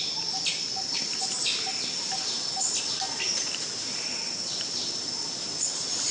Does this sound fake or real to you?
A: real